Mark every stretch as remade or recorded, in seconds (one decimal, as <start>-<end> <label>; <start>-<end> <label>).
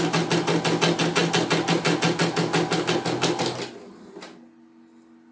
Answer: 0.0-5.3 recorded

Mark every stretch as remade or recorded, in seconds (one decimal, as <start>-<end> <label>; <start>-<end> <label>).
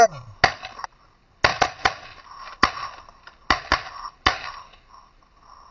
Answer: 0.0-1.5 recorded; 1.5-2.2 remade; 2.2-5.7 recorded